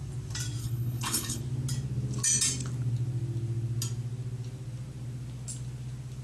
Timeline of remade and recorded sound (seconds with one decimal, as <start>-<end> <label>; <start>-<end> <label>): 0.0-0.6 recorded; 0.6-1.4 remade; 1.4-6.2 recorded